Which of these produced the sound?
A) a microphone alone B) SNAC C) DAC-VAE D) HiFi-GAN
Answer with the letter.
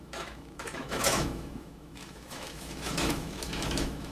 C